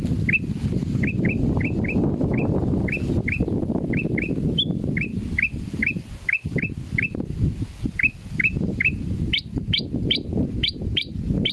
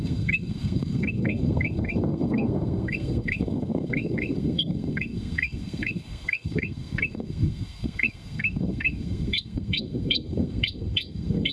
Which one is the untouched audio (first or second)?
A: first